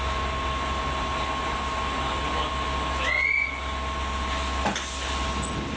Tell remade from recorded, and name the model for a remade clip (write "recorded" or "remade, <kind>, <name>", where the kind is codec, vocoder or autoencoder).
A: recorded